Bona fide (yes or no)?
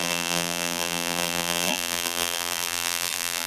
no